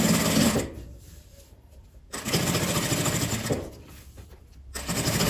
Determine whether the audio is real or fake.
fake